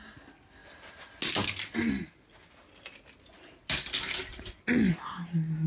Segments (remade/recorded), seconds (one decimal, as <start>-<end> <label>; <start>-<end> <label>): 0.0-4.3 recorded; 4.3-4.9 remade; 4.9-5.7 recorded